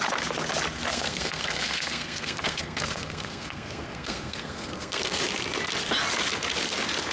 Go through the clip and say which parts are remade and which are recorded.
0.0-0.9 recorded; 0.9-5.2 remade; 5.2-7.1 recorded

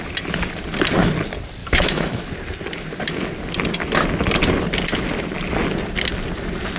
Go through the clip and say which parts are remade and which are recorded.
0.0-1.6 recorded; 1.6-2.2 remade; 2.2-6.8 recorded

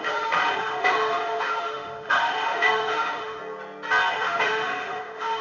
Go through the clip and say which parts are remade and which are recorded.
0.0-3.4 remade; 3.4-4.1 recorded; 4.1-5.4 remade

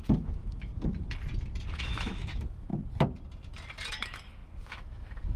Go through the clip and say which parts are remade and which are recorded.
0.0-0.7 remade; 0.7-1.8 recorded; 1.8-2.7 remade; 2.7-3.9 recorded; 3.9-5.4 remade

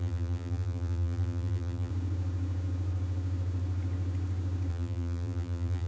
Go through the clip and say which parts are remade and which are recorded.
0.0-1.9 remade; 1.9-4.7 recorded; 4.7-5.9 remade

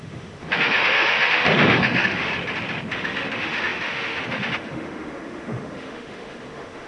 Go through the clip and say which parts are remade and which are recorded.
0.0-2.3 remade; 2.3-2.9 recorded; 2.9-6.9 remade

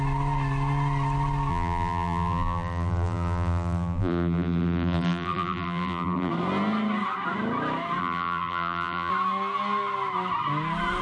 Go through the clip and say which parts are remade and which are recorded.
0.0-1.5 recorded; 1.5-6.3 remade; 6.3-8.0 recorded; 8.0-9.1 remade; 9.1-11.0 recorded